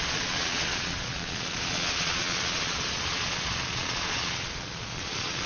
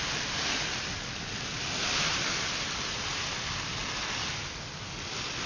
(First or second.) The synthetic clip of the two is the first